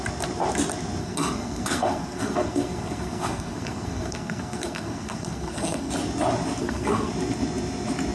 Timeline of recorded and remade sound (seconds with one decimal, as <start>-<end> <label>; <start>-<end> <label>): 0.0-1.0 recorded; 1.0-5.9 remade; 5.9-6.6 recorded; 6.6-7.1 remade; 7.1-8.1 recorded